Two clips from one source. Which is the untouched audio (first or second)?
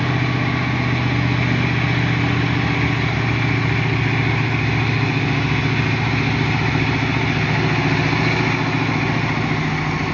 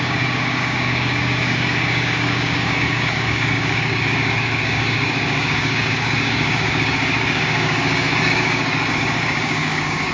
first